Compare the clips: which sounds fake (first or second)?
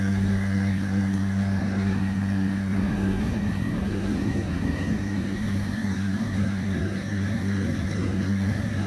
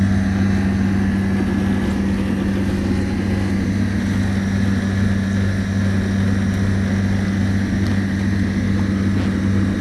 first